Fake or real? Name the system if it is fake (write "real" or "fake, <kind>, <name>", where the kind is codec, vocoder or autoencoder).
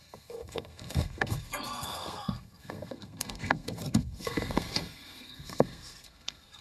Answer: fake, codec, SNAC